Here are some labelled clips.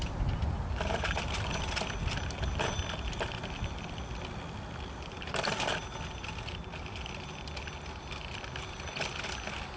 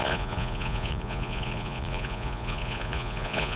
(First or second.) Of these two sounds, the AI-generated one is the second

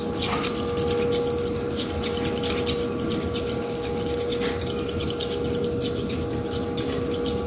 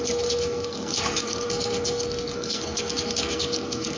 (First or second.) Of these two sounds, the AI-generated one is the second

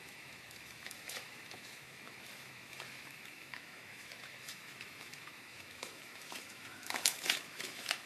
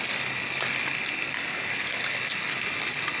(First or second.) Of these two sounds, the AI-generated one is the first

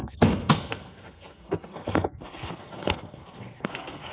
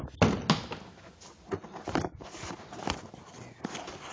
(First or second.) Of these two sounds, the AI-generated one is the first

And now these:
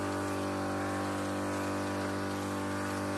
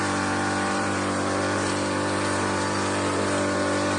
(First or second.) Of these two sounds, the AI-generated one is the second